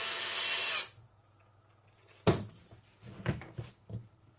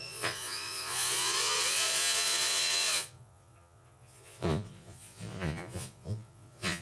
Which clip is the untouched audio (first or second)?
first